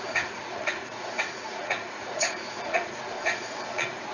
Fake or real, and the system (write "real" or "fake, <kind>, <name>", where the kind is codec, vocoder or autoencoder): fake, vocoder, Vocos